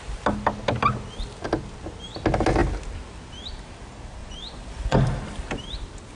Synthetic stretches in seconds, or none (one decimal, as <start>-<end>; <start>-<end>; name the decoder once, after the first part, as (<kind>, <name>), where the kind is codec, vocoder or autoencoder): 4.2-5.0 (vocoder, Vocos)